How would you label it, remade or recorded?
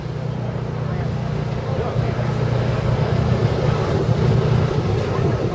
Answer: recorded